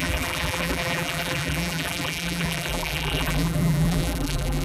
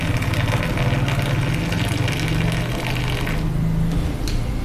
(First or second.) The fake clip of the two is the first